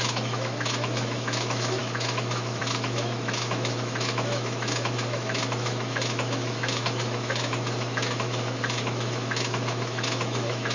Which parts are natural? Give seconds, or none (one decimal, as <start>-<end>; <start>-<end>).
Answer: none